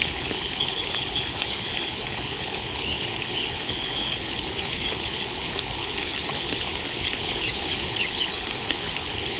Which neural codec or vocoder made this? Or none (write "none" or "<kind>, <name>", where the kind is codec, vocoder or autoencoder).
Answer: codec, HILCodec